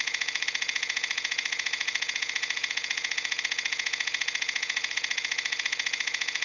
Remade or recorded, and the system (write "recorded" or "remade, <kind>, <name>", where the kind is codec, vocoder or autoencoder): remade, vocoder, Vocos